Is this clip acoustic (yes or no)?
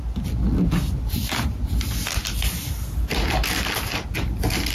yes